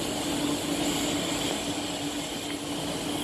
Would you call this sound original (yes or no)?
yes